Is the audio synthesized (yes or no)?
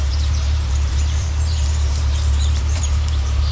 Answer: yes